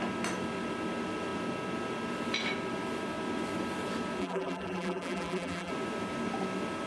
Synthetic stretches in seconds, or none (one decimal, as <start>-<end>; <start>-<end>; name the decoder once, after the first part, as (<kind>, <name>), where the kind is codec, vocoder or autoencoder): 4.2-5.7 (vocoder, BigVGAN v2)